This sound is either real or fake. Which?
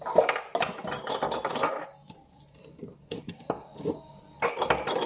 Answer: real